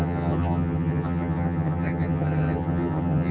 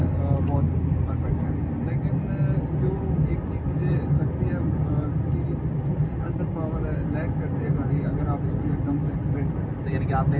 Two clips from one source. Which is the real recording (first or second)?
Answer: second